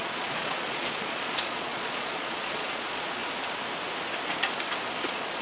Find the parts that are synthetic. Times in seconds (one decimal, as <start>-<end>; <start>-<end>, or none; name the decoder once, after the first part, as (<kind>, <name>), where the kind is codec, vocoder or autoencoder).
0.0-3.2 (vocoder, Vocos); 5.0-5.4

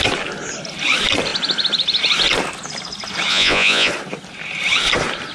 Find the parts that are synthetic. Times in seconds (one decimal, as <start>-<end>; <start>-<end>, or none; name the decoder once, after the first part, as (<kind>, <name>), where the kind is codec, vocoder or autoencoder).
3.3-3.9 (vocoder, Vocos)

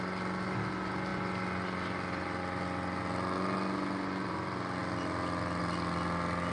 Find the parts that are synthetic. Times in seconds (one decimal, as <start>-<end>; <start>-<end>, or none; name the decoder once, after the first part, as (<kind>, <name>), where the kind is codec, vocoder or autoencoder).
none

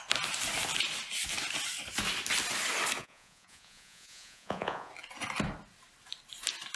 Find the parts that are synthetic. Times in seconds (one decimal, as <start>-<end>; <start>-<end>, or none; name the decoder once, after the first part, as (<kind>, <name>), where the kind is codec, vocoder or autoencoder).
3.0-4.9 (vocoder, Vocos)

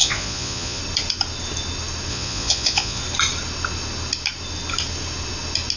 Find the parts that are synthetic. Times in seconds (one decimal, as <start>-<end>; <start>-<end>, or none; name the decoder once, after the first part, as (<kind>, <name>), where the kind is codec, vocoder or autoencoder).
0.0-0.8 (vocoder, Vocos); 2.1-3.0

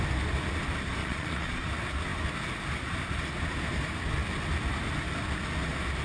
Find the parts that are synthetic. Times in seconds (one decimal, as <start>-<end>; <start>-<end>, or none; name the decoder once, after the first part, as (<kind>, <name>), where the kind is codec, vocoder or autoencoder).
1.0-1.7 (vocoder, Vocos)

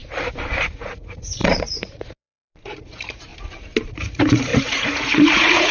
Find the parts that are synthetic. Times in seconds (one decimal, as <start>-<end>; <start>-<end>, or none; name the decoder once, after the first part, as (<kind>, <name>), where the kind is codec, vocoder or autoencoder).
0.7-3.3 (vocoder, Vocos); 3.9-5.7